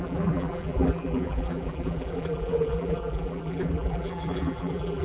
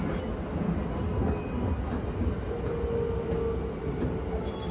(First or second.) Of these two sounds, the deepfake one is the first